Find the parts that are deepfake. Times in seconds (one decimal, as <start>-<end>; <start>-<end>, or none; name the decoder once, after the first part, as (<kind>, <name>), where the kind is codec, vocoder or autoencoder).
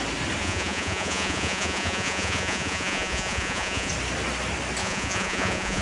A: 0.4-3.9 (vocoder, Vocos); 4.8-5.8